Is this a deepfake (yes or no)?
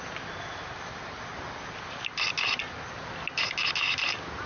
no